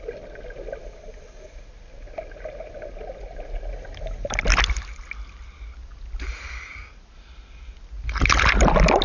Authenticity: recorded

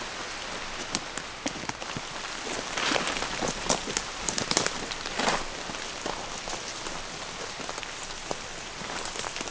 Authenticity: recorded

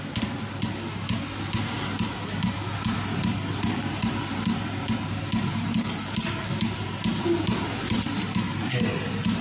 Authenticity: recorded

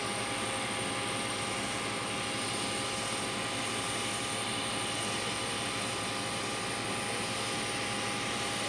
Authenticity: recorded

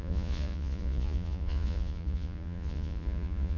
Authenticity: remade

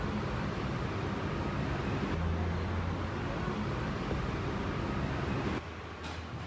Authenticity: recorded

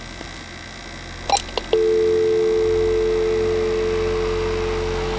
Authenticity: recorded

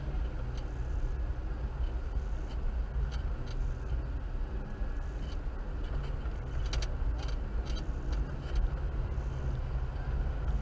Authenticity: recorded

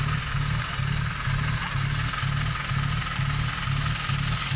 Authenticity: recorded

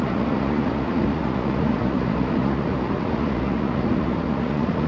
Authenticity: remade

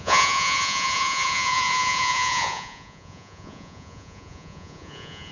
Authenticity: remade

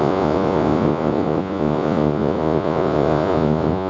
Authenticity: remade